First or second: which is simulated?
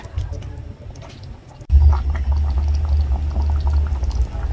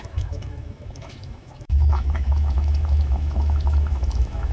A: second